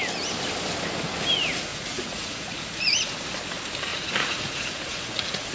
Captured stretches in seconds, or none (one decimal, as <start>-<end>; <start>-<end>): 0.0-1.7; 3.1-3.9